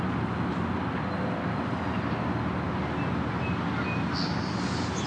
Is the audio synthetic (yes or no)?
no